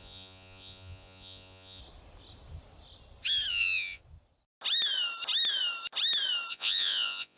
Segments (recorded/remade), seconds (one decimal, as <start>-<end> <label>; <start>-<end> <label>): 0.0-1.8 remade; 1.8-3.5 recorded; 3.5-4.0 remade; 4.0-6.5 recorded; 6.5-7.4 remade